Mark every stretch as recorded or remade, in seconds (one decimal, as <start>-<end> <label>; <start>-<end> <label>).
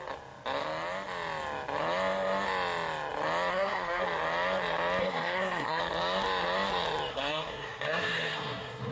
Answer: 0.0-3.5 recorded; 3.5-4.0 remade; 4.0-5.0 recorded; 5.0-5.8 remade; 5.8-7.1 recorded; 7.1-8.9 remade